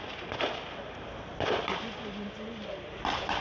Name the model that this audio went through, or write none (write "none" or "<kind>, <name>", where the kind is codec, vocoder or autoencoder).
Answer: none